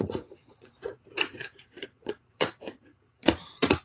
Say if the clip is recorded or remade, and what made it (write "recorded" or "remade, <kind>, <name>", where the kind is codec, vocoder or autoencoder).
remade, vocoder, Vocos